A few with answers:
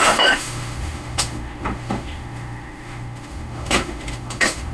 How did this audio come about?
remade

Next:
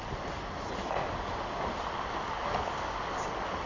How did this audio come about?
recorded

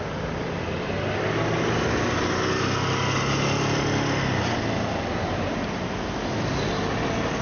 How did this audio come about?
recorded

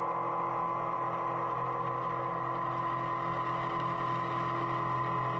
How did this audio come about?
recorded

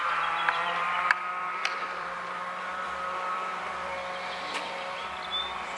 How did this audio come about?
remade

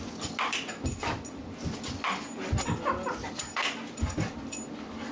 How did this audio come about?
recorded